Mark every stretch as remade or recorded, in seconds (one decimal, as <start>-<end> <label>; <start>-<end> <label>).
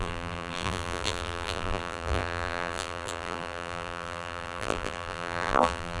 0.0-6.0 remade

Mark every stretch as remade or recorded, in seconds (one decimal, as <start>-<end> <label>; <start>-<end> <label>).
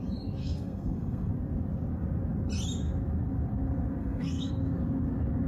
0.0-0.4 recorded; 0.4-1.3 remade; 1.3-4.0 recorded; 4.0-4.5 remade; 4.5-5.5 recorded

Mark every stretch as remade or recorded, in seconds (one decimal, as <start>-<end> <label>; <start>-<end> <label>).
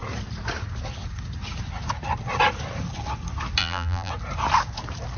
0.0-3.6 recorded; 3.6-4.1 remade; 4.1-5.2 recorded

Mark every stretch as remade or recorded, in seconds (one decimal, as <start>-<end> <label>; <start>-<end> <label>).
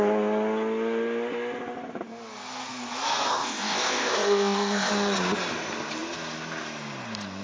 0.0-3.3 recorded; 3.3-4.9 remade; 4.9-7.4 recorded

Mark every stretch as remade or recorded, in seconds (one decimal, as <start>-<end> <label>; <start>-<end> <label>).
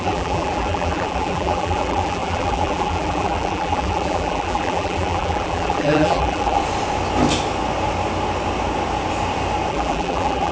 0.0-6.6 remade; 6.6-9.7 recorded; 9.7-10.5 remade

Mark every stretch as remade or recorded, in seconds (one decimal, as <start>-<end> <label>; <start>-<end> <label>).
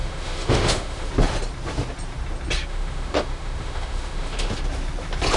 0.0-1.1 remade; 1.1-2.7 recorded; 2.7-4.5 remade; 4.5-5.4 recorded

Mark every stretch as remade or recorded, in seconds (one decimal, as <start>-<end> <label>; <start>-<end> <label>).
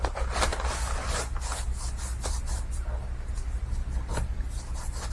0.0-5.1 recorded